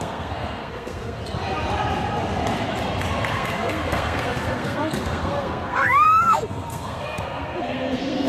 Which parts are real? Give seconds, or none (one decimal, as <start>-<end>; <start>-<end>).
1.2-3.3